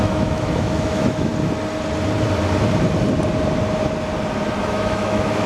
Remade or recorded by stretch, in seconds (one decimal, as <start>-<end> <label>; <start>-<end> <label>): 0.0-1.3 remade; 1.3-4.6 recorded; 4.6-5.5 remade